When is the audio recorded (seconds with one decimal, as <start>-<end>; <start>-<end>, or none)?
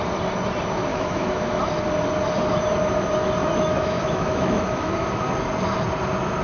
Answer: 0.0-0.9; 1.6-3.4; 5.2-6.4